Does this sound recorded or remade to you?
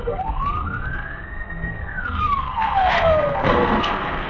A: remade